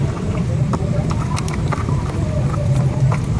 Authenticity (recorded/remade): recorded